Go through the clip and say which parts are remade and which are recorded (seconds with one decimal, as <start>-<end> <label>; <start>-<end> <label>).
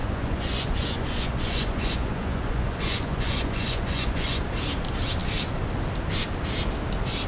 0.0-4.4 remade; 4.4-7.3 recorded